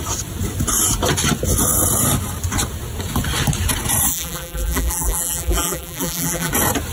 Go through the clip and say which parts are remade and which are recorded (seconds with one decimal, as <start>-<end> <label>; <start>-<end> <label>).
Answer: 0.0-4.1 recorded; 4.1-6.5 remade; 6.5-6.9 recorded